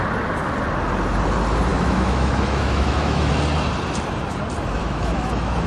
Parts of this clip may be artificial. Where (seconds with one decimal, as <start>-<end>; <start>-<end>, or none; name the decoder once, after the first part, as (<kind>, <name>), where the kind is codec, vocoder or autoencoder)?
1.7-3.3 (autoencoder, DAC-VAE); 4.8-5.7